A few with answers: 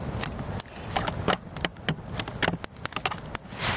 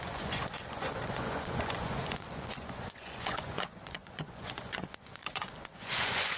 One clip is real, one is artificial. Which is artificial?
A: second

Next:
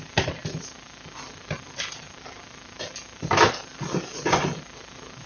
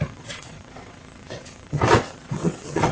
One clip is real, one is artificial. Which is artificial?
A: second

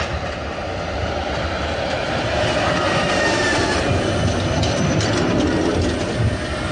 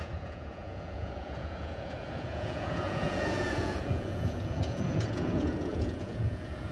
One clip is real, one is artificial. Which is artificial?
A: second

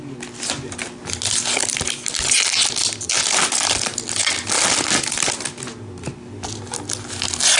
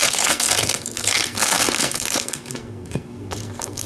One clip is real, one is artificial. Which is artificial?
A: second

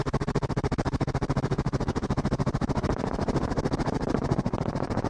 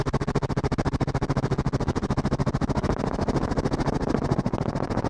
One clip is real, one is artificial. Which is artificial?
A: first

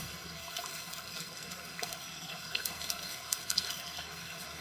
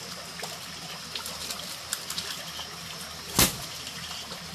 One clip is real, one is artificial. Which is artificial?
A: first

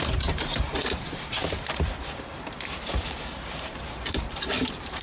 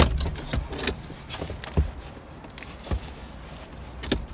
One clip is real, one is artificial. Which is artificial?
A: first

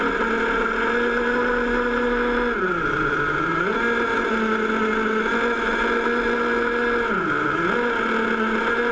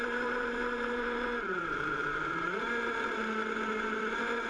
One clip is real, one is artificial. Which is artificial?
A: second